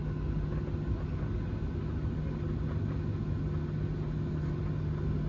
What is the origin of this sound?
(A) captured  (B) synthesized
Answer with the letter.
A